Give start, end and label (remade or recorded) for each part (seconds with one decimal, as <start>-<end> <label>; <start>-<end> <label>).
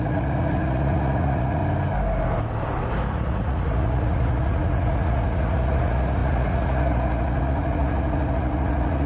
0.0-1.6 remade; 1.6-3.1 recorded; 3.1-9.1 remade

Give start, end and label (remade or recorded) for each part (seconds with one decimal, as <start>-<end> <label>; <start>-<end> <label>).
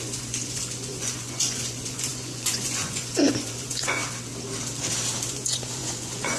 0.0-4.0 remade; 4.0-5.3 recorded; 5.3-6.4 remade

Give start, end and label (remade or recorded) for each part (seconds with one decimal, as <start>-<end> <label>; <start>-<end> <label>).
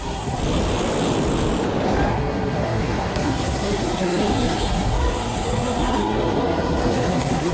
0.0-0.4 remade; 0.4-2.1 recorded; 2.1-7.5 remade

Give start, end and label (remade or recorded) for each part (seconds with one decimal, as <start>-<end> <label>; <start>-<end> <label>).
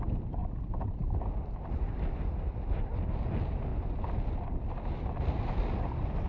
0.0-6.3 recorded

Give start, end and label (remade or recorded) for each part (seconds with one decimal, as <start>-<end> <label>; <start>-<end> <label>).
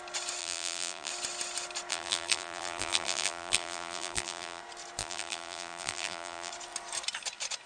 0.0-0.4 recorded; 0.4-1.1 remade; 1.1-1.9 recorded; 1.9-4.6 remade; 4.6-5.0 recorded; 5.0-6.5 remade; 6.5-7.7 recorded